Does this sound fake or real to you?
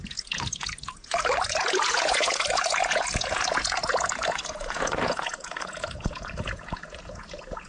fake